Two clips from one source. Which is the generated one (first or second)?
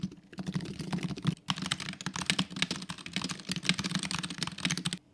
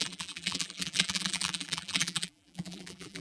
second